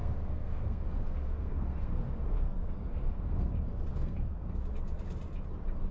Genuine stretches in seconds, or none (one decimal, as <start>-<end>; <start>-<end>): 3.5-3.9; 4.6-5.9